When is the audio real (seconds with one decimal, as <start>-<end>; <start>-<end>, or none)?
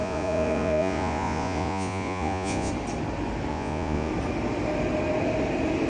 2.7-3.5; 4.1-5.9